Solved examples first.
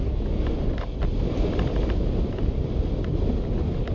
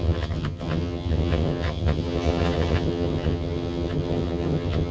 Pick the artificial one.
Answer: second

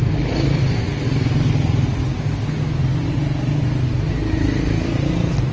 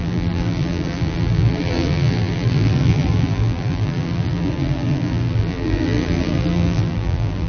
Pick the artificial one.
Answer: second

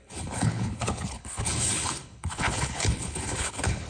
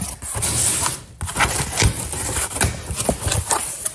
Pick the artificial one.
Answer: first